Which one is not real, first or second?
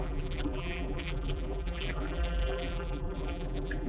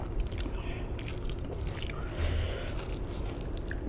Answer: first